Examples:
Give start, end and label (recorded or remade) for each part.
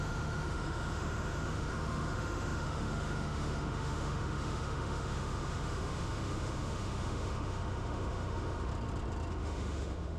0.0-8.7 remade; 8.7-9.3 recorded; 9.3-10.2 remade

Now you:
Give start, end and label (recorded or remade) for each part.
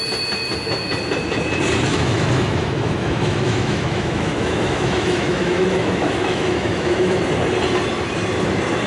0.0-1.9 recorded; 1.9-7.2 remade; 7.2-8.9 recorded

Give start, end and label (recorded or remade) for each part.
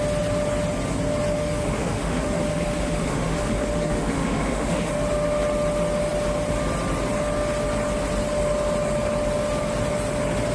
0.0-1.4 recorded; 1.4-4.9 remade; 4.9-10.5 recorded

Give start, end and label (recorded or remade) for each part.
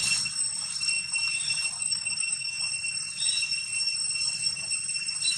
0.0-1.8 recorded; 1.8-2.6 remade; 2.6-5.4 recorded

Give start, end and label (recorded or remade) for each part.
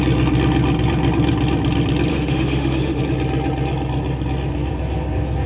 0.0-2.1 recorded; 2.1-3.0 remade; 3.0-5.5 recorded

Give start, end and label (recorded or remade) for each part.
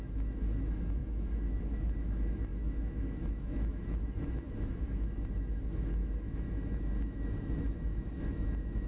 0.0-8.9 remade